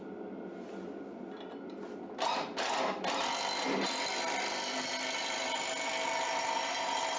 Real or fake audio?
real